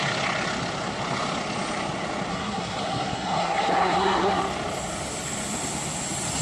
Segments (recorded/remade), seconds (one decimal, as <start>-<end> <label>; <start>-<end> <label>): 0.0-2.3 recorded; 2.3-4.4 remade; 4.4-6.4 recorded